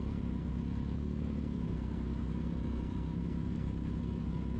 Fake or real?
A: fake